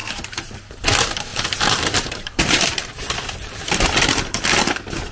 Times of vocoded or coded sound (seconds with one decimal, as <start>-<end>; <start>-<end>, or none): 1.3-4.4